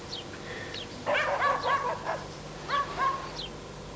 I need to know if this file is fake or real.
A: real